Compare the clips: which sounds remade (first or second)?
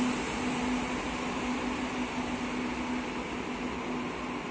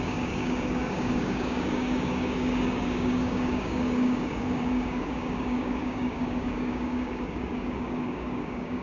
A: second